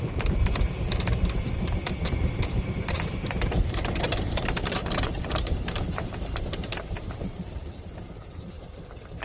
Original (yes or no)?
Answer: no